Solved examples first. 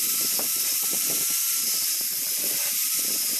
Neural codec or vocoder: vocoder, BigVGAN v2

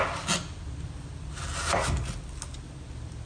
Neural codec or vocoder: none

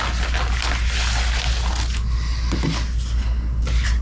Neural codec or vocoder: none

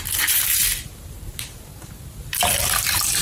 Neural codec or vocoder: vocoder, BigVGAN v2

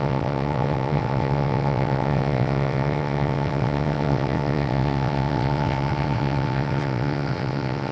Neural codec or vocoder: vocoder, WaveNeXt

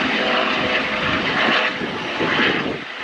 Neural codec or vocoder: none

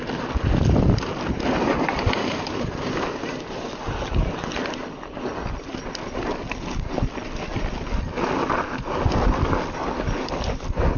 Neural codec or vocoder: none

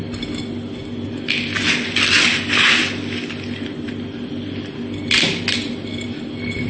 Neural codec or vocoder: none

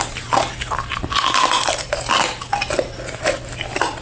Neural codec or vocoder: none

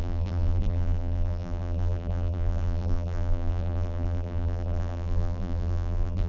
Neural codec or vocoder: vocoder, BigVGAN v2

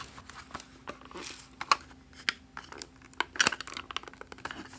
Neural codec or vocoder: none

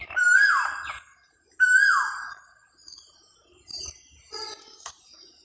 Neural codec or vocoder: none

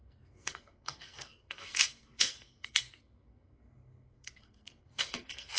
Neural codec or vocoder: codec, SNAC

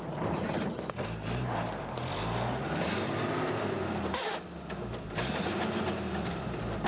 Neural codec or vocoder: none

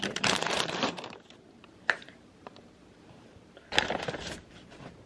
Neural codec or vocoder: vocoder, BigVGAN v2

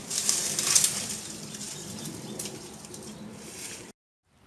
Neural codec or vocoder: none